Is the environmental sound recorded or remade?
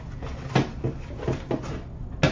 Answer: recorded